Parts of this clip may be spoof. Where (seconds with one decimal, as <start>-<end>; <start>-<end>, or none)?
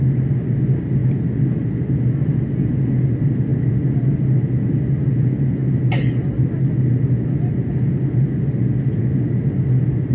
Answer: none